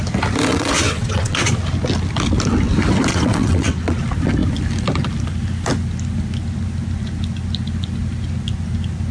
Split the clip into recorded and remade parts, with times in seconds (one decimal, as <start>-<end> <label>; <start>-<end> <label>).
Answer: 0.0-0.5 recorded; 0.5-1.5 remade; 1.5-3.1 recorded; 3.1-4.0 remade; 4.0-9.1 recorded